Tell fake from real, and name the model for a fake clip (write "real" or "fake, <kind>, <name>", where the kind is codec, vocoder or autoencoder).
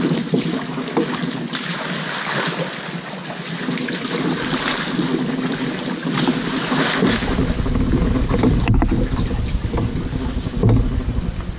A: real